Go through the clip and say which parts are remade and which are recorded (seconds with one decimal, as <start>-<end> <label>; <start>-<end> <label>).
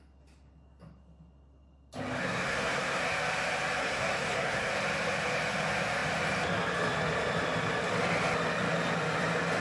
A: 0.0-2.2 recorded; 2.2-3.0 remade; 3.0-3.8 recorded; 3.8-4.7 remade; 4.7-9.6 recorded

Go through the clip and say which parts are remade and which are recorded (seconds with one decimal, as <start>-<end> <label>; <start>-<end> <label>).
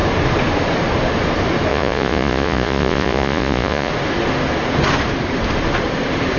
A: 0.0-1.7 recorded; 1.7-3.9 remade; 3.9-6.4 recorded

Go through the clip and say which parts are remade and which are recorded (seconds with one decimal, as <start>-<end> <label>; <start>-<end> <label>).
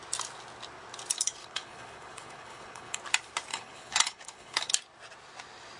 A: 0.0-1.4 recorded; 1.4-3.0 remade; 3.0-3.5 recorded; 3.5-4.7 remade; 4.7-5.8 recorded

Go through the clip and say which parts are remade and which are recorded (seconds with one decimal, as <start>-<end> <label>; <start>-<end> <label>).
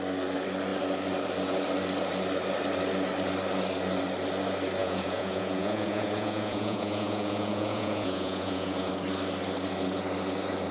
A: 0.0-4.8 recorded; 4.8-8.9 remade; 8.9-10.7 recorded